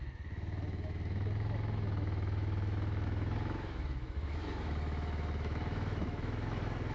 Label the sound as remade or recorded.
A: remade